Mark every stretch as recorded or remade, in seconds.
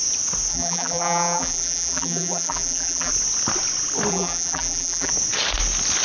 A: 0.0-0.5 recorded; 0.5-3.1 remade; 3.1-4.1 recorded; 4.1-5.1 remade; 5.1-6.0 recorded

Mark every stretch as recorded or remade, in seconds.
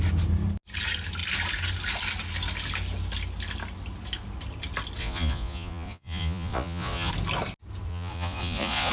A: 0.0-5.0 recorded; 5.0-7.1 remade; 7.1-7.9 recorded; 7.9-8.9 remade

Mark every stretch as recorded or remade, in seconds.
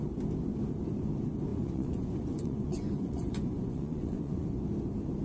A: 0.0-1.5 recorded; 1.5-4.6 remade; 4.6-5.2 recorded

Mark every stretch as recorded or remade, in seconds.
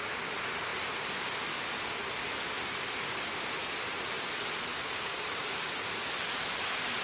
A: 0.0-4.7 recorded; 4.7-5.6 remade; 5.6-7.0 recorded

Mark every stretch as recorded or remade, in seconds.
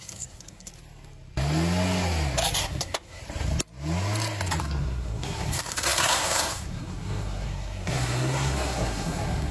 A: 0.0-0.7 remade; 0.7-2.6 recorded; 2.6-3.2 remade; 3.2-4.6 recorded; 4.6-9.5 remade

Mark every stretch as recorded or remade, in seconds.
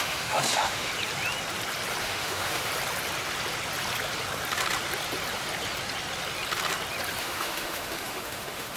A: 0.0-0.9 remade; 0.9-2.0 recorded; 2.0-2.7 remade; 2.7-7.2 recorded; 7.2-8.8 remade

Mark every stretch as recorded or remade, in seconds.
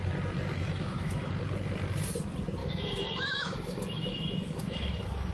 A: 0.0-0.6 recorded; 0.6-1.3 remade; 1.3-2.6 recorded; 2.6-5.3 remade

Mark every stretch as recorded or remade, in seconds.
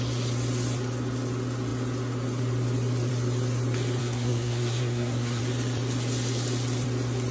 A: 0.0-4.0 recorded; 4.0-5.4 remade; 5.4-7.3 recorded